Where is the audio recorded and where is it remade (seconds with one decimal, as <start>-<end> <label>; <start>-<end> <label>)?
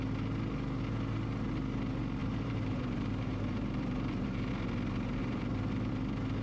0.0-2.2 recorded; 2.2-4.5 remade; 4.5-5.2 recorded; 5.2-5.9 remade; 5.9-6.4 recorded